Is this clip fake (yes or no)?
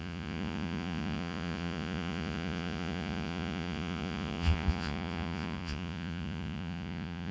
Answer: yes